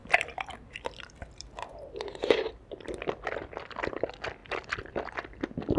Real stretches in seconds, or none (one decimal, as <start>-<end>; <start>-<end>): 2.7-4.4